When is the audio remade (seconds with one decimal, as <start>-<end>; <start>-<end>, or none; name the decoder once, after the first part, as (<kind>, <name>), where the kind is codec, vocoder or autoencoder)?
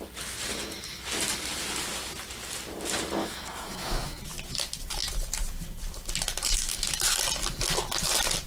3.2-4.2 (autoencoder, DAC-VAE)